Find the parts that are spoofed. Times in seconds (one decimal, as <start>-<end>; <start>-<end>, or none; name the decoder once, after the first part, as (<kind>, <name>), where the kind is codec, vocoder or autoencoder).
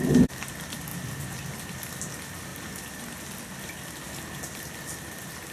none